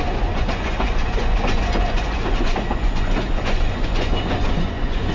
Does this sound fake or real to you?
fake